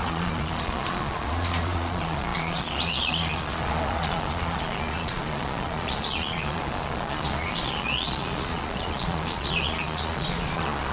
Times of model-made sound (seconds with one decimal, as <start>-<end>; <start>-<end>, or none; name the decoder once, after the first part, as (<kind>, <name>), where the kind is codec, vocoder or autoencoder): 0.0-10.9 (vocoder, Vocos)